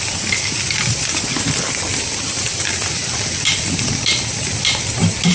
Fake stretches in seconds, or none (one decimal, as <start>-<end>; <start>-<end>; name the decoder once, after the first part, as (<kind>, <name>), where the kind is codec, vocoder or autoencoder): 1.9-3.0 (vocoder, BigVGAN v2)